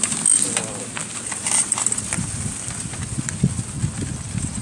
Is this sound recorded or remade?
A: recorded